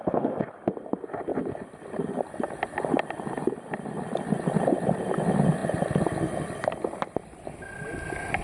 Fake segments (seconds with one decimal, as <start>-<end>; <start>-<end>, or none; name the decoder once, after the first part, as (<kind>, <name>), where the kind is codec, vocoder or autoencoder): none